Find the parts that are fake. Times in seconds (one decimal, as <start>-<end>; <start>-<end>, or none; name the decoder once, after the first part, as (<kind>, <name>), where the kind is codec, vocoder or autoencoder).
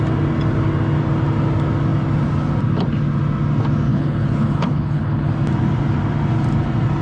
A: 3.9-5.3 (codec, HILCodec)